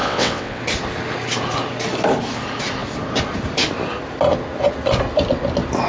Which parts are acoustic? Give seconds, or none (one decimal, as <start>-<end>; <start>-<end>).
0.6-5.9